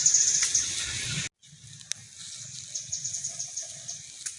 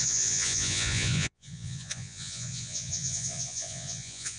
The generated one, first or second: second